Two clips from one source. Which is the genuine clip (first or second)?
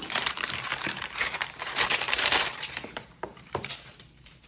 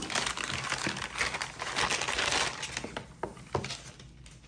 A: second